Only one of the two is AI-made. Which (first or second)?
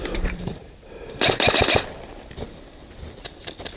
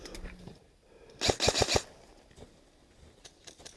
first